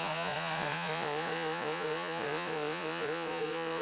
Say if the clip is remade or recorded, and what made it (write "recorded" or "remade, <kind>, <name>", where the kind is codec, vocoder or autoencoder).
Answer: remade, vocoder, Vocos